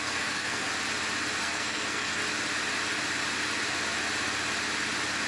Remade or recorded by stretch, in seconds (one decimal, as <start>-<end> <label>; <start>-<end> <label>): 0.0-0.7 remade; 0.7-1.4 recorded; 1.4-2.2 remade; 2.2-5.3 recorded